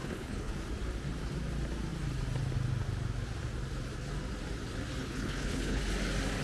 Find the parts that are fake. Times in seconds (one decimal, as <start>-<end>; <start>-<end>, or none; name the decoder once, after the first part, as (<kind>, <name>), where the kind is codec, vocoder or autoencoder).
0.0-0.5 (codec, HILCodec); 5.0-5.8